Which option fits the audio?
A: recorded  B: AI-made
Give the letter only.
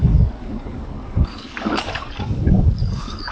B